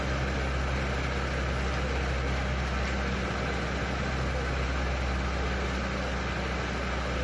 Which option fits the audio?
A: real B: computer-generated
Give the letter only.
A